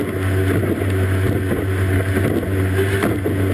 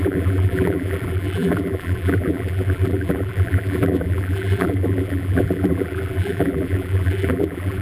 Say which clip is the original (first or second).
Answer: first